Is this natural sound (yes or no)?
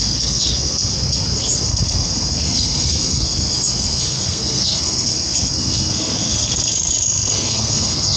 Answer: no